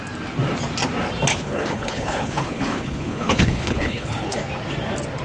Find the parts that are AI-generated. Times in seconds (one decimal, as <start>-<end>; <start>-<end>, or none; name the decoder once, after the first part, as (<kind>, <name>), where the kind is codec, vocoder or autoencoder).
1.3-4.4 (codec, HILCodec)